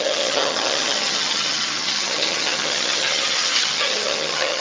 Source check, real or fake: fake